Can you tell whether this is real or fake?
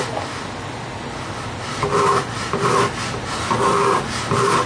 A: real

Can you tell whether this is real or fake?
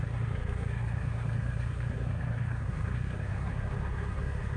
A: fake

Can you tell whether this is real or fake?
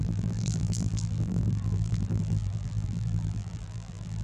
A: fake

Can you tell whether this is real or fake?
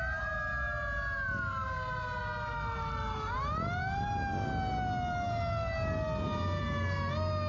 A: real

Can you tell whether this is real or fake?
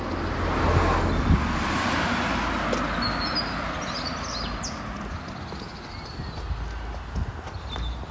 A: real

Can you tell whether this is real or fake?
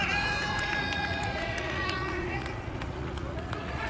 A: fake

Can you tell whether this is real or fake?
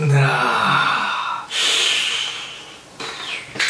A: fake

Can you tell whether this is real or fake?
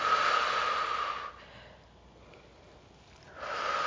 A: real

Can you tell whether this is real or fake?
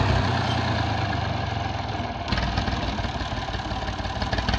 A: real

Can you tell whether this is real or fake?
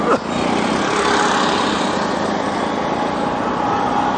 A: real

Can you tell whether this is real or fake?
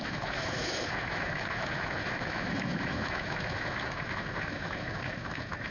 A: fake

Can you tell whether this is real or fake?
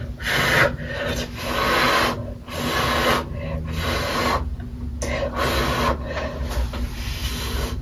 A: real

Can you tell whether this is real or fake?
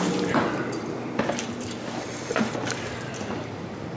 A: fake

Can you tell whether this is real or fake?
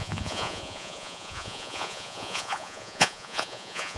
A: fake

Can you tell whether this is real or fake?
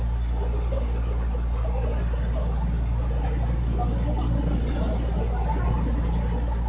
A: real